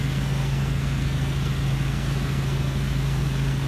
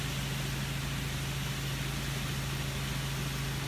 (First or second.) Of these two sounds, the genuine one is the second